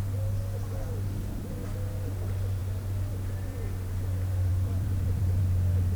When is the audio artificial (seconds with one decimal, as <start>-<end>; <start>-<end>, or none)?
4.5-5.4